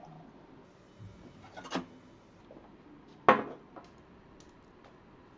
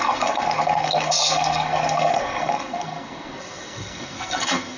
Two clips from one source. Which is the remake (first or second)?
second